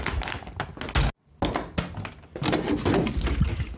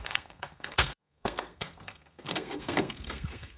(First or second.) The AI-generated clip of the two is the second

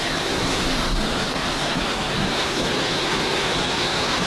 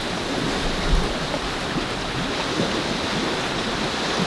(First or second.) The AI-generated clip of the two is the first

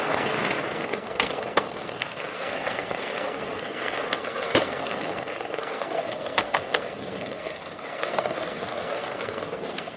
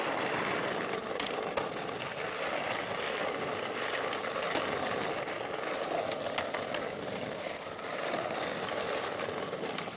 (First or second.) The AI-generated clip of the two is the first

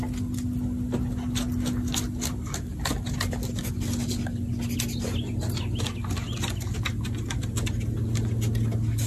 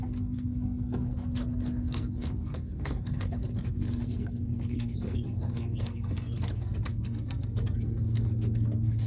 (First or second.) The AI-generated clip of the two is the second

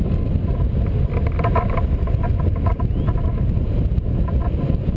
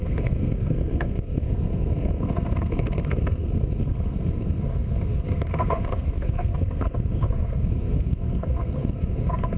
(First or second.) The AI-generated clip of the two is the second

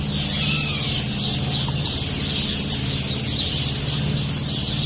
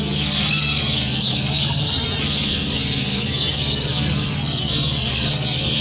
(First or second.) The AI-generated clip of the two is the second